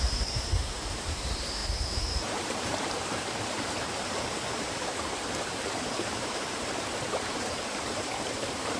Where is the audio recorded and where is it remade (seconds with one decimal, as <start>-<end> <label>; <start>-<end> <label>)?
0.0-8.8 remade